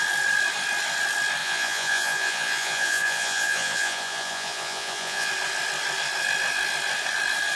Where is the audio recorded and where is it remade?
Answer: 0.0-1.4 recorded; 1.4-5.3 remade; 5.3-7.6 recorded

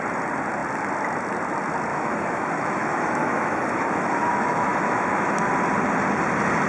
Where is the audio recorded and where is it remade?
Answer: 0.0-1.9 recorded; 1.9-5.5 remade; 5.5-6.7 recorded

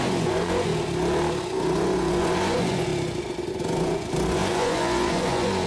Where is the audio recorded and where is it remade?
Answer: 0.0-0.7 remade; 0.7-1.4 recorded; 1.4-2.9 remade; 2.9-3.5 recorded; 3.5-5.7 remade

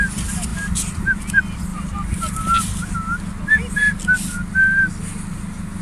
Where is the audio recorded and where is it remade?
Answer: 0.0-5.8 recorded

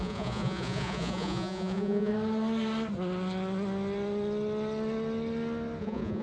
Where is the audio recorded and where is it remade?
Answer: 0.0-2.1 remade; 2.1-5.8 recorded; 5.8-6.2 remade

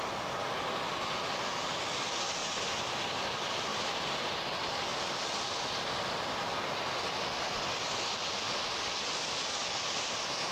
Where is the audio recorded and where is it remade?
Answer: 0.0-2.4 recorded; 2.4-2.9 remade; 2.9-3.7 recorded; 3.7-4.3 remade; 4.3-10.5 recorded

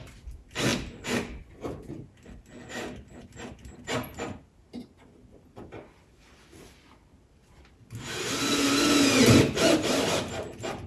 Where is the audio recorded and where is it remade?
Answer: 0.0-10.9 recorded